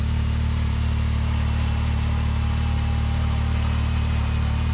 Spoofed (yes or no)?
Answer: no